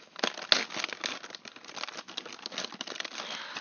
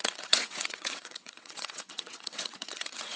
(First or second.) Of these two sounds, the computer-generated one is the second